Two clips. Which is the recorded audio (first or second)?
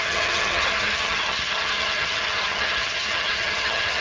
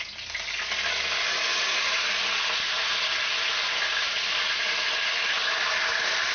second